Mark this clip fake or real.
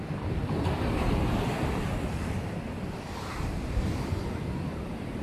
fake